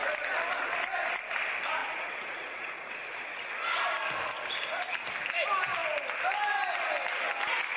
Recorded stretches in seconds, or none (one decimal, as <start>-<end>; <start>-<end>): 0.0-1.8; 2.9-7.8

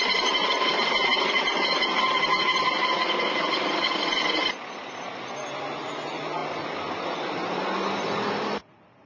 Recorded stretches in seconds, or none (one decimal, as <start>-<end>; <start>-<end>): 0.0-9.1

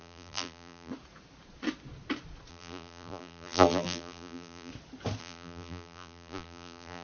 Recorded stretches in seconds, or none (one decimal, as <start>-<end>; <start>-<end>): 0.9-2.5; 4.7-5.2

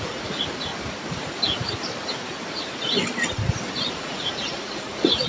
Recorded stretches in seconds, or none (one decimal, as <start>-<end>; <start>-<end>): 0.7-3.9

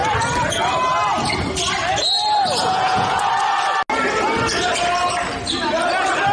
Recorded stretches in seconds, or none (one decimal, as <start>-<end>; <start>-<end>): 0.0-2.6; 3.3-6.3

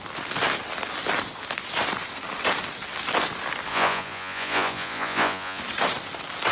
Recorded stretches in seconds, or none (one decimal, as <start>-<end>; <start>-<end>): 0.0-3.7; 5.6-6.5

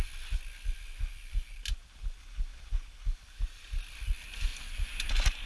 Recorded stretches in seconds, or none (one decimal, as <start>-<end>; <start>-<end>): 0.0-5.5

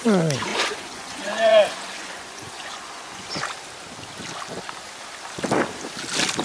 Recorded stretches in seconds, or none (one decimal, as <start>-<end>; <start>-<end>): 0.0-0.5; 3.2-6.4